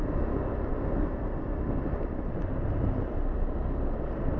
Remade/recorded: recorded